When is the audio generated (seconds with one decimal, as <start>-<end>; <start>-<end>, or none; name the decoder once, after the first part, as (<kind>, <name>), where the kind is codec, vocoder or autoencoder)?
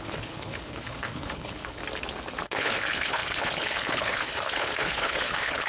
0.0-1.8 (codec, HILCodec); 2.4-5.7